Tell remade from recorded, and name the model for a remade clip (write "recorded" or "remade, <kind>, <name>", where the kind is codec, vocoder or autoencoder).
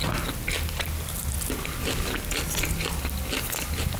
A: recorded